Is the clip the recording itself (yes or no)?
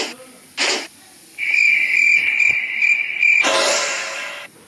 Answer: yes